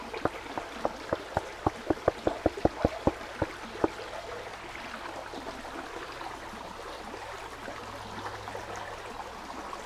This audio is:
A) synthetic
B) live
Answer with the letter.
B